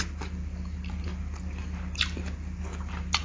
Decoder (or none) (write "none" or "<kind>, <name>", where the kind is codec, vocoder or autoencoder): none